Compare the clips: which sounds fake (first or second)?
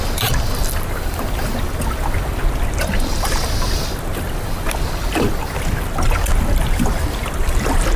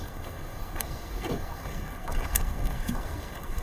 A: second